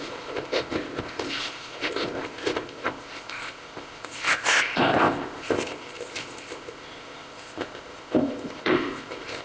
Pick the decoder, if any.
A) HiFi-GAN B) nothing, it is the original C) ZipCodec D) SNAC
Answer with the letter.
C